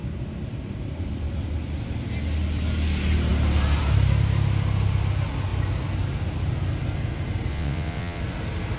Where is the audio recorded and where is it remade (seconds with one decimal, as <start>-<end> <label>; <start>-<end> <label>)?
0.0-7.5 recorded; 7.5-8.2 remade; 8.2-8.8 recorded